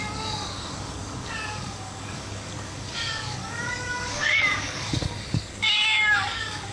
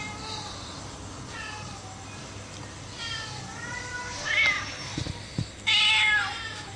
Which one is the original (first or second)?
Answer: second